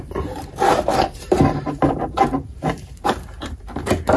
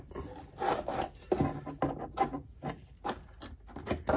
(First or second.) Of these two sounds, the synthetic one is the first